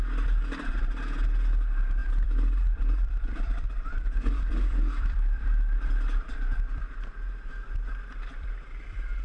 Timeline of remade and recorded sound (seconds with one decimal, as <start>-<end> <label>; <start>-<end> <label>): 0.0-2.0 recorded; 2.0-7.1 remade; 7.1-8.3 recorded; 8.3-9.2 remade